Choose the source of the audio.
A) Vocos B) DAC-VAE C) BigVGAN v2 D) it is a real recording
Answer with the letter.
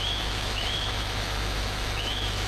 B